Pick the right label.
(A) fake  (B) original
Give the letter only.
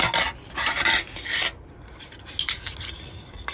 B